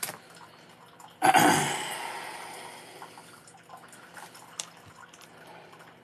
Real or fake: real